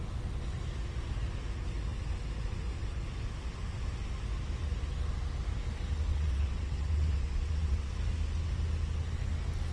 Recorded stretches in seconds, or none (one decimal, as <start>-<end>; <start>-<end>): 0.0-6.1; 7.9-9.7